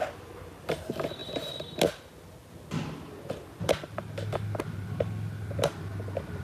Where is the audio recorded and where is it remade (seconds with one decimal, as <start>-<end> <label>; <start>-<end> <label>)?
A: 0.0-6.4 recorded